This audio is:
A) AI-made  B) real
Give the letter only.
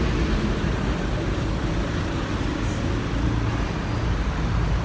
B